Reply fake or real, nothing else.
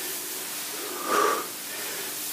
real